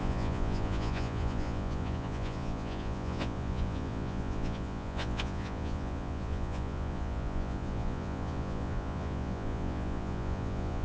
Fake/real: fake